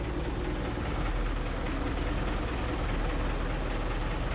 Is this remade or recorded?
recorded